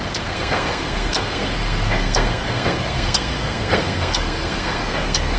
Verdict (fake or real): fake